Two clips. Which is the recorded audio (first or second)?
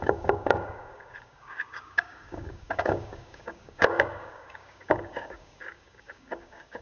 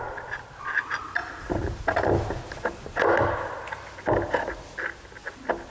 second